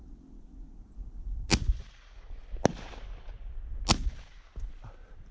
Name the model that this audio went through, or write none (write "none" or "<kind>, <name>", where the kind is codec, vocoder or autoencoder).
none